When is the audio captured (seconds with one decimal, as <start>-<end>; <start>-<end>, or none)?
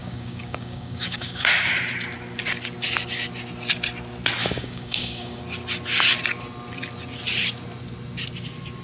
1.7-4.4; 5.4-8.8